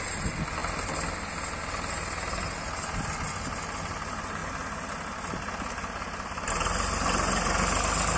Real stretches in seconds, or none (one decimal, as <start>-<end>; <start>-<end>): 0.0-8.2